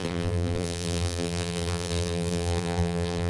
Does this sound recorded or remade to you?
remade